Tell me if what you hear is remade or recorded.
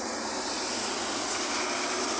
recorded